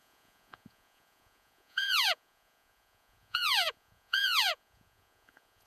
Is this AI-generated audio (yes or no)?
yes